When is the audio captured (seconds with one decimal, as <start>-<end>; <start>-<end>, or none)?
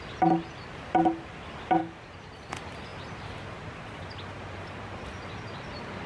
0.0-6.1